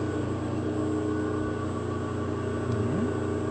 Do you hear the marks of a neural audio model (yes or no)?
no